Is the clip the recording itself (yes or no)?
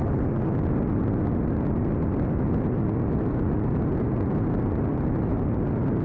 yes